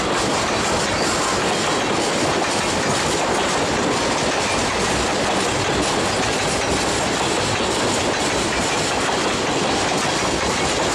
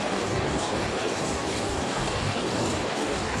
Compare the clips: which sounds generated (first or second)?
second